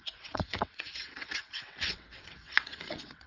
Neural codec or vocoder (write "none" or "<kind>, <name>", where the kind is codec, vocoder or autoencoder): vocoder, WaveNeXt